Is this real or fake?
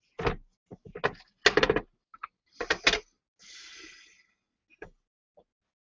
real